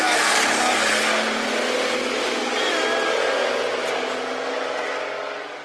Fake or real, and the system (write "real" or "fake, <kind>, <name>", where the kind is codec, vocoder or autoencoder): real